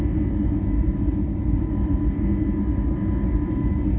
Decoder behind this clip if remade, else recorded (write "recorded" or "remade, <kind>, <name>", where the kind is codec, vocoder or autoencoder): recorded